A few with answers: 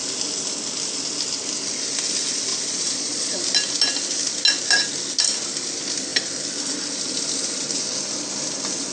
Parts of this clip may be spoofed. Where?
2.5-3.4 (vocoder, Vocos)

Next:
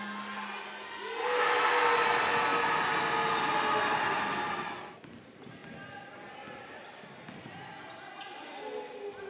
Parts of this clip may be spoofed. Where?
none

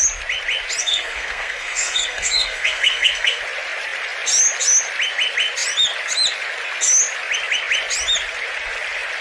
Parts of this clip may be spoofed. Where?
0.8-3.4 (codec, SNAC)

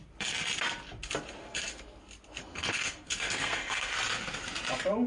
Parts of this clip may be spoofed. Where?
1.4-2.0 (codec, SNAC); 2.4-3.9

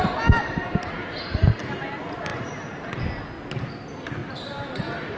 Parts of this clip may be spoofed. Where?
0.4-1.6 (vocoder, BigVGAN v2); 2.3-3.0; 4.2-4.8

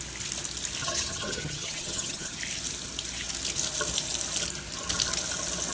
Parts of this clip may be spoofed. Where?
0.8-2.4 (vocoder, HiFi-GAN)